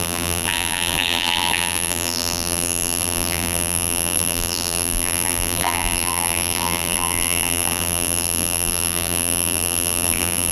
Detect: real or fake fake